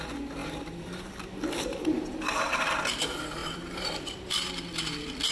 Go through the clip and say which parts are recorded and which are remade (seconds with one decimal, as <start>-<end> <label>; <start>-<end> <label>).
0.0-0.4 recorded; 0.4-1.1 remade; 1.1-3.4 recorded; 3.4-4.5 remade; 4.5-5.3 recorded